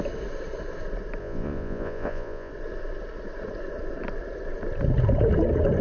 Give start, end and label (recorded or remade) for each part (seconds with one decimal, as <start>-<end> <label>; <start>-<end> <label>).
0.0-1.2 recorded; 1.2-2.5 remade; 2.5-5.8 recorded

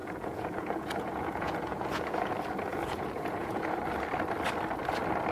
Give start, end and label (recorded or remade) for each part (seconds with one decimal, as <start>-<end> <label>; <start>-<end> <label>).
0.0-2.3 remade; 2.3-2.7 recorded; 2.7-3.8 remade; 3.8-5.3 recorded

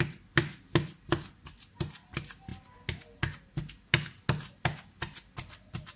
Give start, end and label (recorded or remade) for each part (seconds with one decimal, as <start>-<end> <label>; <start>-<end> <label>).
0.0-6.0 recorded

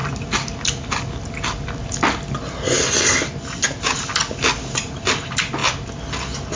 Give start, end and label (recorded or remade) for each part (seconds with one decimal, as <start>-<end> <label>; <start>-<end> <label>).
0.0-6.6 recorded

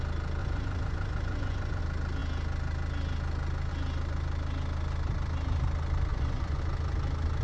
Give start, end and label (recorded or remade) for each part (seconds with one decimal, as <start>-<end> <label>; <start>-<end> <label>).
0.0-0.4 recorded; 0.4-1.8 remade; 1.8-6.1 recorded; 6.1-6.6 remade; 6.6-7.4 recorded